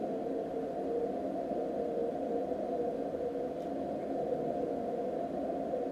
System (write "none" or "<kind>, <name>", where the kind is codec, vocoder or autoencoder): none